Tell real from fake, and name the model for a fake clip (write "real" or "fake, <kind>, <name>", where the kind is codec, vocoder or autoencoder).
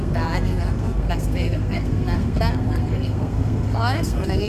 fake, codec, SNAC